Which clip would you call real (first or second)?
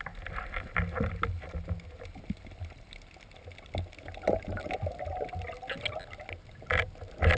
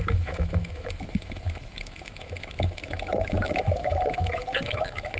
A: first